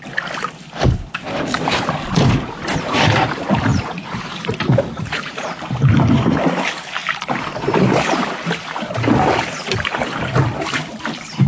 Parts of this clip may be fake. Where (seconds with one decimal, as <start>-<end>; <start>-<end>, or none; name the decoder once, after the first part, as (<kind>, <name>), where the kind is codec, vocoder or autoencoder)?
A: 3.7-5.6 (vocoder, Vocos)

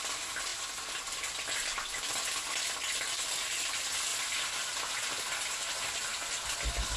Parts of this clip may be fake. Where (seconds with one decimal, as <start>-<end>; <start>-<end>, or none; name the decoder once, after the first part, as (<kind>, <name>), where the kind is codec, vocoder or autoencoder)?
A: none